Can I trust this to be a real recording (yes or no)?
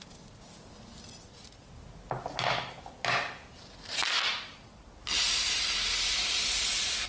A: yes